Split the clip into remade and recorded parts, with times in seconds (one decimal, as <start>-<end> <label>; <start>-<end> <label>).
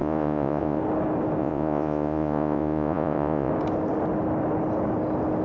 0.0-0.8 remade; 0.8-1.4 recorded; 1.4-3.5 remade; 3.5-5.4 recorded